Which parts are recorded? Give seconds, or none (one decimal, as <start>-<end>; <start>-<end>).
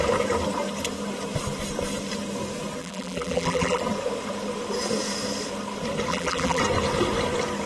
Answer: 0.0-2.8; 3.8-6.1; 6.6-7.7